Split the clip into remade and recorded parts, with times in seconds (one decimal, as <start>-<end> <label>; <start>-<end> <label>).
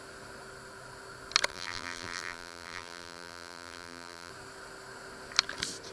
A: 0.0-1.5 recorded; 1.5-4.3 remade; 4.3-5.9 recorded